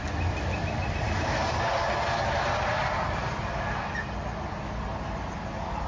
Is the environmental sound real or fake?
real